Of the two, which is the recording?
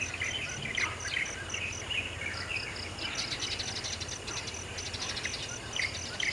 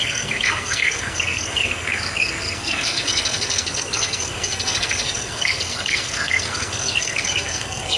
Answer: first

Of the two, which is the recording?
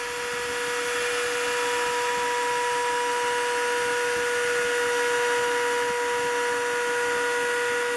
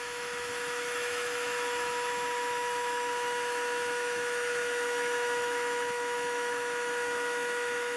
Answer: first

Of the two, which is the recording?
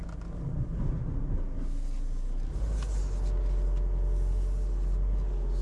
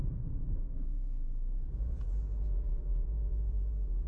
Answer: first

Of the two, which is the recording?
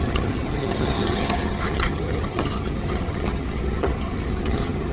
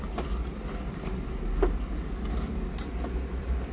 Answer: second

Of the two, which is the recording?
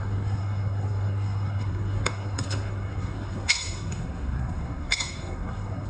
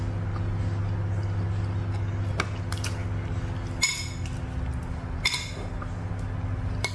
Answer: second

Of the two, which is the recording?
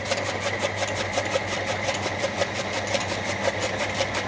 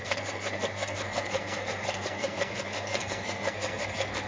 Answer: first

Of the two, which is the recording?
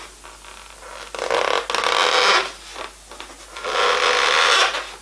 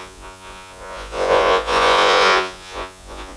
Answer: first